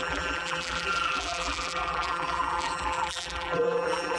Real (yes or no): no